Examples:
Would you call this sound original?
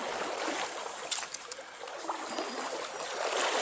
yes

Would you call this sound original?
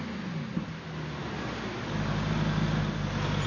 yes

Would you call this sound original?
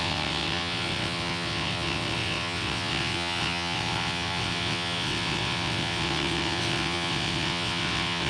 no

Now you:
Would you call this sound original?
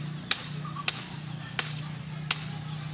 yes